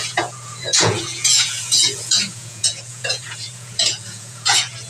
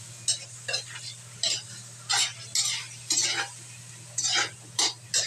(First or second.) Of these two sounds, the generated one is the first